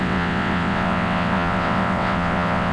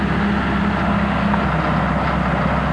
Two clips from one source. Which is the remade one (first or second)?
first